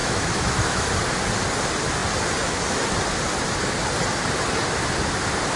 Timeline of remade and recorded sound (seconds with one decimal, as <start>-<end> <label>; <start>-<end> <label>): 0.0-0.9 remade; 0.9-5.6 recorded